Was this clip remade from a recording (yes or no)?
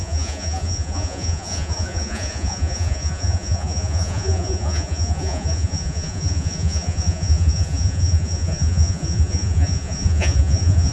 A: yes